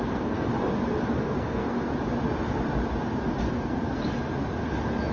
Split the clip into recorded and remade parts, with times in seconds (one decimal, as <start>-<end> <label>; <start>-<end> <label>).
0.0-0.5 remade; 0.5-1.2 recorded; 1.2-1.9 remade; 1.9-3.5 recorded; 3.5-4.0 remade; 4.0-5.1 recorded